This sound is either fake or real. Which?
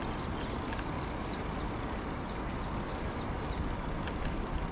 real